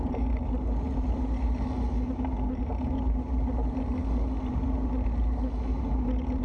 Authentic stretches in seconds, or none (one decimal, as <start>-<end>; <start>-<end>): 0.0-6.4